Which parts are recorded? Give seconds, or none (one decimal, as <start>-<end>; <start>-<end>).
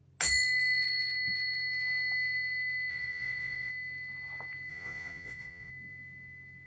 0.0-2.9; 3.7-4.7; 5.7-6.7